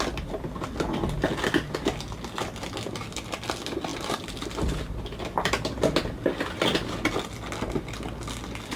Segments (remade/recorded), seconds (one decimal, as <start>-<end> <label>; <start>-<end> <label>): 0.0-3.9 recorded; 3.9-4.6 remade; 4.6-8.8 recorded